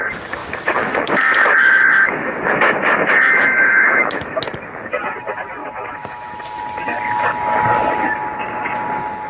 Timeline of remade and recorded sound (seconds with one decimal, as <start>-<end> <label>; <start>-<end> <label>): 0.0-0.4 recorded; 0.4-4.4 remade; 4.4-5.6 recorded; 5.6-6.6 remade; 6.6-9.3 recorded